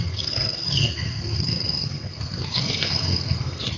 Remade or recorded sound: remade